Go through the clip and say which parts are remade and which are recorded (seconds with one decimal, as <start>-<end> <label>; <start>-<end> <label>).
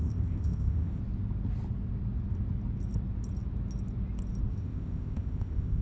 0.0-1.0 remade; 1.0-4.5 recorded; 4.5-5.8 remade